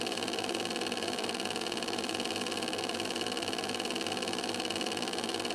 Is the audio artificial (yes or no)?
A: yes